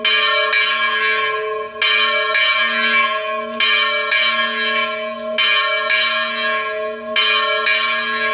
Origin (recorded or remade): recorded